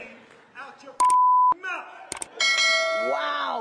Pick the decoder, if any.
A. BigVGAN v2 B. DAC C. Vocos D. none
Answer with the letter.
D